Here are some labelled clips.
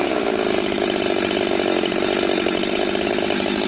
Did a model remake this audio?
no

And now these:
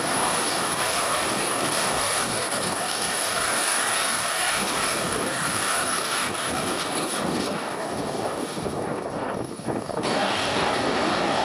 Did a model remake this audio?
yes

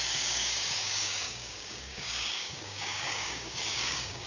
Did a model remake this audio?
yes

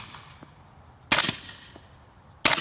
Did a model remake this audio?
no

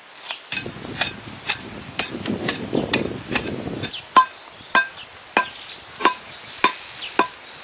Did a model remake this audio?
no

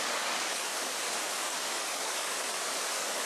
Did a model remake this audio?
yes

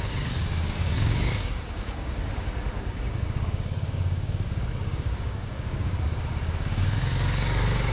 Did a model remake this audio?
yes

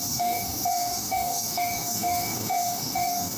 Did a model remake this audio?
yes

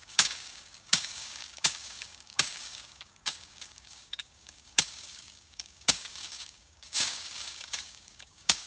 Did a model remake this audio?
yes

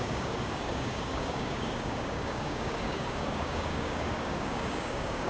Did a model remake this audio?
yes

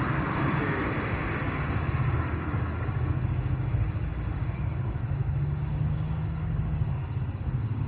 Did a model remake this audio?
yes